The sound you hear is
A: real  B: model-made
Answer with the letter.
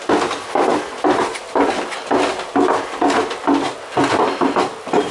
A